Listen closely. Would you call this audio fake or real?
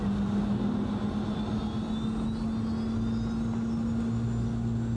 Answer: real